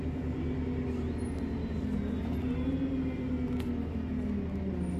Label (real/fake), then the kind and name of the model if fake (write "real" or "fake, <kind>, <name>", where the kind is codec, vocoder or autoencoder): real